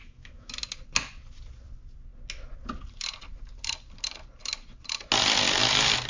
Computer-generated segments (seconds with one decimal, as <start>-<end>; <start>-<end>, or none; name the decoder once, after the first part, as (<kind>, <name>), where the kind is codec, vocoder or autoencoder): 0.0-0.5 (autoencoder, DAC-VAE)